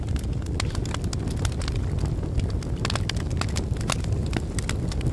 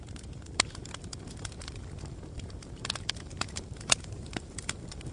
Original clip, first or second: first